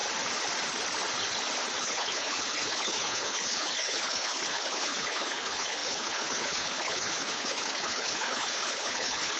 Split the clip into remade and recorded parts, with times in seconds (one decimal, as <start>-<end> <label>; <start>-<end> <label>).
0.0-1.8 recorded; 1.8-9.4 remade